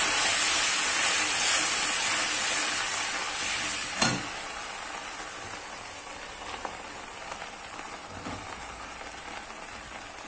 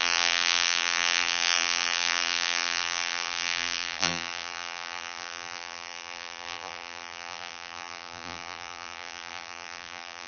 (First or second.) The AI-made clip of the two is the second